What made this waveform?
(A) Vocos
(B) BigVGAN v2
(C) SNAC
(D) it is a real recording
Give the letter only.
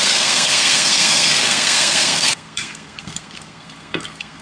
C